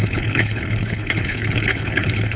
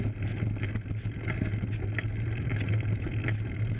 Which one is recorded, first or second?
second